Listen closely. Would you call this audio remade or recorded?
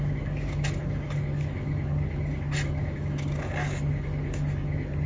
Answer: recorded